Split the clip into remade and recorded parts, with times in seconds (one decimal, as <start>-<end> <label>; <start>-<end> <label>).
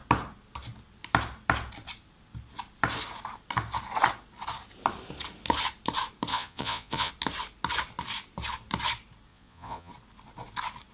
0.0-6.3 recorded; 6.3-7.1 remade; 7.1-9.3 recorded; 9.3-9.9 remade; 9.9-10.9 recorded